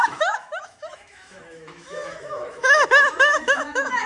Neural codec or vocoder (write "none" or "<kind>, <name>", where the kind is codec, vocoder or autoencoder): autoencoder, DAC-VAE